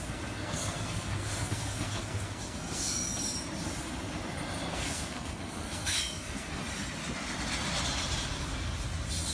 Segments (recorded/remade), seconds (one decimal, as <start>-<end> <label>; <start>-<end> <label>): 0.0-3.1 remade; 3.1-4.7 recorded; 4.7-6.6 remade; 6.6-9.3 recorded